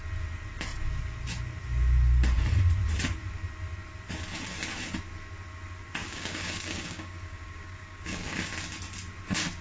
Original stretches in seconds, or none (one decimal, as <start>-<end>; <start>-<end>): 0.0-6.0; 8.5-9.6